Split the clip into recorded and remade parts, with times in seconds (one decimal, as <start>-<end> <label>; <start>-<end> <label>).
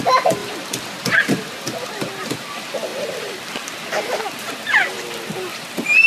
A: 0.0-6.1 recorded